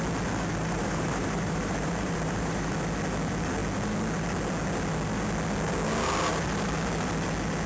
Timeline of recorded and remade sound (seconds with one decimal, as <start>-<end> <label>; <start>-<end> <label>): 0.0-0.6 recorded; 0.6-2.7 remade; 2.7-7.7 recorded